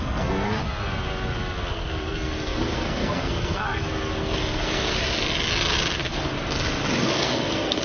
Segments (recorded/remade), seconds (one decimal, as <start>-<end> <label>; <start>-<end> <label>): 0.0-0.6 remade; 0.6-1.7 recorded; 1.7-5.0 remade; 5.0-7.0 recorded; 7.0-7.8 remade